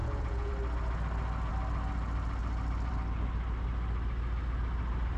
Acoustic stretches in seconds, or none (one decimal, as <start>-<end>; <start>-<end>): 0.5-5.2